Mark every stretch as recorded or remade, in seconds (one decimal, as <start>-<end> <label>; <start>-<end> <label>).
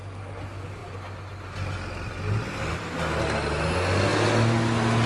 0.0-5.1 recorded